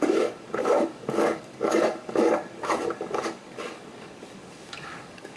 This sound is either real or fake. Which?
fake